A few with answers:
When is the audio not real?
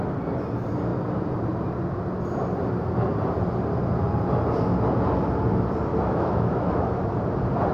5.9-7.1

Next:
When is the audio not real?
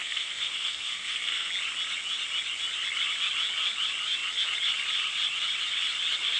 0.0-1.5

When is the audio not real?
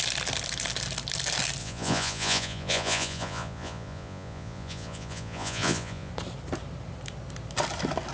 1.6-6.1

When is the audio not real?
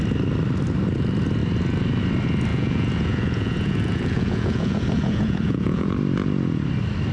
2.5-5.9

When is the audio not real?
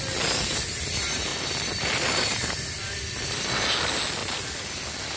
1.3-3.5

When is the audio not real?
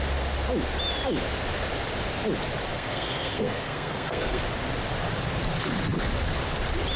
2.7-4.4